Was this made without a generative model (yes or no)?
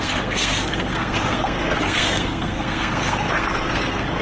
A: no